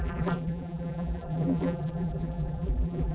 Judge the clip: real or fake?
fake